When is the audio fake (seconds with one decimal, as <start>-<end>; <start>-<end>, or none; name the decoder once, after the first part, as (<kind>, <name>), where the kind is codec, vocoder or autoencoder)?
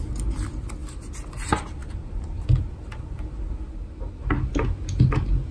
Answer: none